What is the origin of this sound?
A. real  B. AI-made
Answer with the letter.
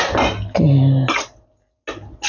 A